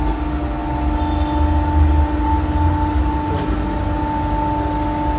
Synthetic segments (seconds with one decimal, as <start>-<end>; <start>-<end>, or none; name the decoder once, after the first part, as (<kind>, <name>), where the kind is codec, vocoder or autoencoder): none